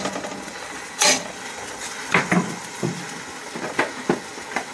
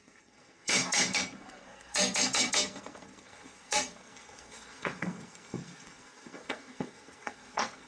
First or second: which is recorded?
first